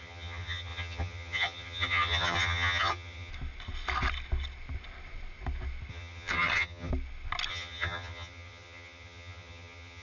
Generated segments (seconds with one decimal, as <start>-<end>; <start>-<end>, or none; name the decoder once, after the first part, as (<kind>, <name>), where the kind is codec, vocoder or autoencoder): 0.0-3.3 (vocoder, HiFi-GAN); 5.9-6.9; 7.5-10.0